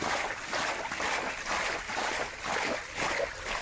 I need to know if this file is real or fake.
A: real